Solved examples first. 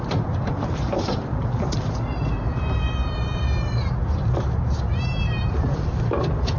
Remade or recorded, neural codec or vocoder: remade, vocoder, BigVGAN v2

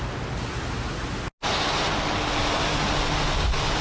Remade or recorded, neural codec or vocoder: recorded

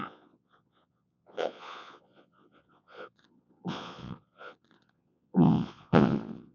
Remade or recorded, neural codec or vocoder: remade, vocoder, Vocos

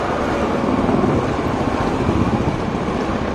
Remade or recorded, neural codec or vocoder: recorded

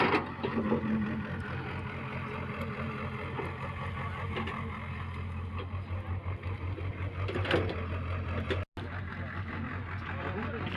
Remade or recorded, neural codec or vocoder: recorded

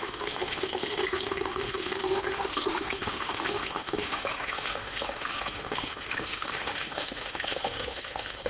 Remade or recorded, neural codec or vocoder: remade, autoencoder, DAC-VAE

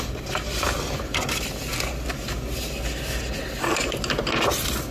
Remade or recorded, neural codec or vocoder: recorded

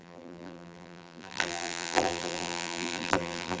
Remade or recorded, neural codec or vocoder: remade, vocoder, BigVGAN v2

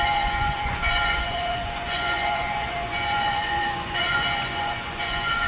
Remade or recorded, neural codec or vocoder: remade, vocoder, Vocos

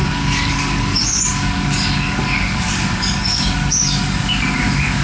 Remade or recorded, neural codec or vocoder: remade, codec, DAC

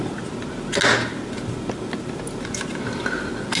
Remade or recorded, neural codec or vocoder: recorded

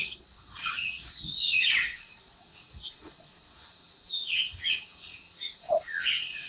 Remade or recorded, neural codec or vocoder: remade, vocoder, WaveNeXt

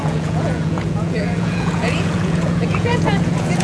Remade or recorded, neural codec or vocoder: remade, vocoder, Vocos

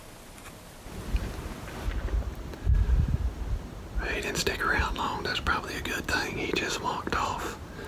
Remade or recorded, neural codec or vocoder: recorded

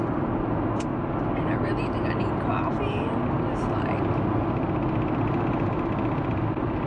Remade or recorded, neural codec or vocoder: recorded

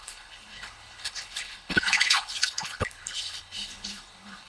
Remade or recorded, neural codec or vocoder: remade, codec, HILCodec